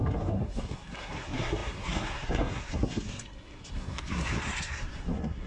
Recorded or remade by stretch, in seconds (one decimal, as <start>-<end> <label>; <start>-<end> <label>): 0.0-5.5 remade